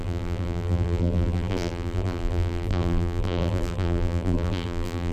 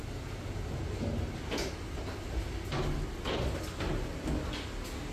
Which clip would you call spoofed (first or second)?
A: first